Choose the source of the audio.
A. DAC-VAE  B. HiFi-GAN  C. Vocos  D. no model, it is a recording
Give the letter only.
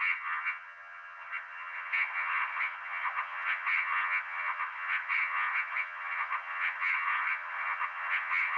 B